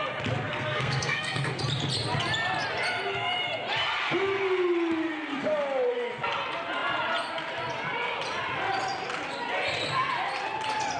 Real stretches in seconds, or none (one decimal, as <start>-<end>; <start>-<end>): 0.0-0.5; 1.6-11.0